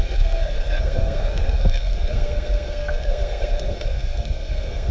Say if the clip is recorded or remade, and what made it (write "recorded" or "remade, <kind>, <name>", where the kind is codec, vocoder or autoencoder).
remade, codec, SNAC